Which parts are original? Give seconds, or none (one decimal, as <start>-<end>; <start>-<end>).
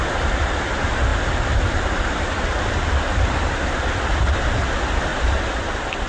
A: 0.0-5.1; 5.6-6.1